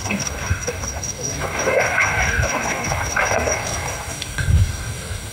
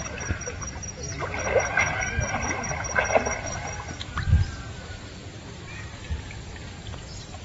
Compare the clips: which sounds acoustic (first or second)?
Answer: second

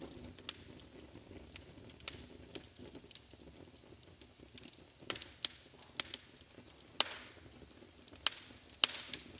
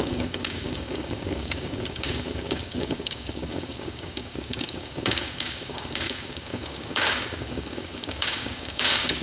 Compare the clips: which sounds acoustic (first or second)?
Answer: first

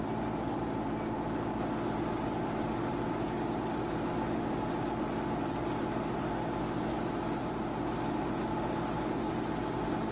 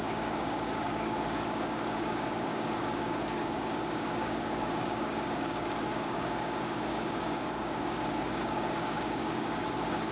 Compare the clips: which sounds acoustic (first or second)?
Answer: first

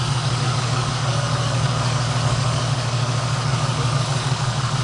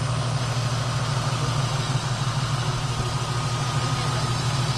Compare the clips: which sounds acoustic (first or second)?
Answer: second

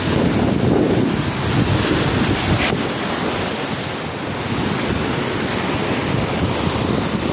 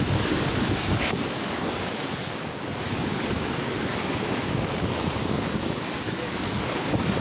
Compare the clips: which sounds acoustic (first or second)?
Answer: first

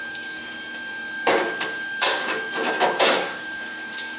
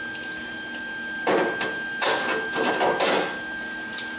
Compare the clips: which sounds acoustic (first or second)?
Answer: second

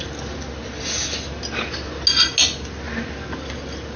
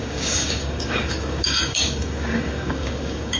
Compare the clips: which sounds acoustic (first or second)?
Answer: first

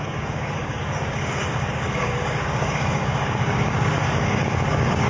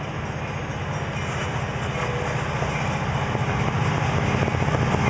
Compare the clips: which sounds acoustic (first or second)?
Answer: second